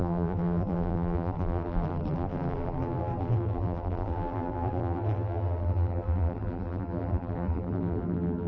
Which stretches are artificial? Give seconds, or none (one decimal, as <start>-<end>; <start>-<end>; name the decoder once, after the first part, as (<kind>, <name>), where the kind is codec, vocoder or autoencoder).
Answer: 0.0-8.5 (vocoder, BigVGAN v2)